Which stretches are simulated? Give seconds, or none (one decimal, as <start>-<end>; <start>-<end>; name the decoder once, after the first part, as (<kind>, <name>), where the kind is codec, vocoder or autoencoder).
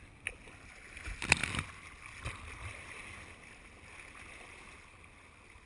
none